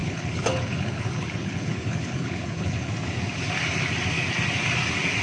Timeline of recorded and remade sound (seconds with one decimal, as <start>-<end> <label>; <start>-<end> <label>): 0.0-2.9 remade; 2.9-5.2 recorded